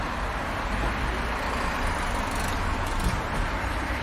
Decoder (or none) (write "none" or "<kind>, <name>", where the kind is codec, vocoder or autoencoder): none